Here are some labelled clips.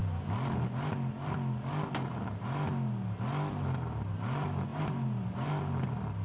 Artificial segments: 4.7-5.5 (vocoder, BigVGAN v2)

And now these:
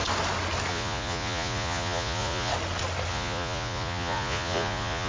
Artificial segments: 0.7-2.5 (vocoder, Vocos); 3.1-5.1

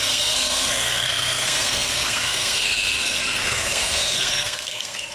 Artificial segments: 0.0-5.1 (codec, SNAC)

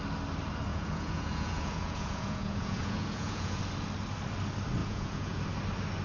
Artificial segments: 0.7-3.6 (vocoder, Vocos); 4.8-5.4

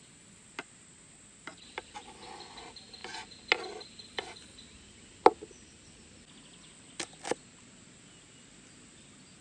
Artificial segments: none